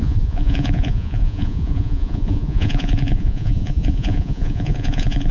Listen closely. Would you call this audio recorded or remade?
remade